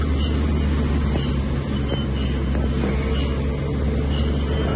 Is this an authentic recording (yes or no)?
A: yes